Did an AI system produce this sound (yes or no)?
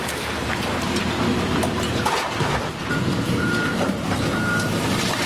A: yes